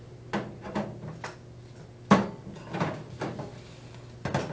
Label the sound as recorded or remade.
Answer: recorded